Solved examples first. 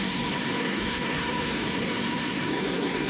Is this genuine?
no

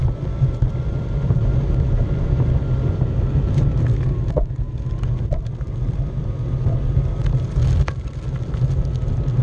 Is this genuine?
yes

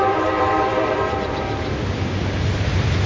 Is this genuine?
no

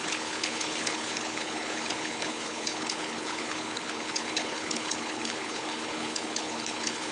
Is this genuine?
no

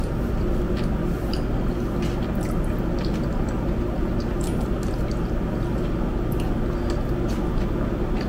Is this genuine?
yes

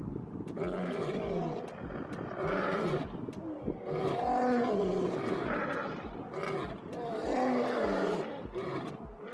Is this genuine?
yes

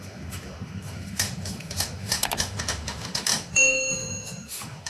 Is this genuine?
no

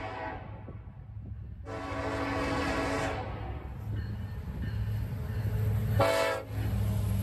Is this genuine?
yes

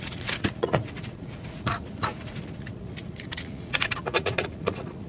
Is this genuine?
no